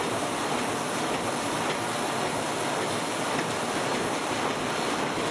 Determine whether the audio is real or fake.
fake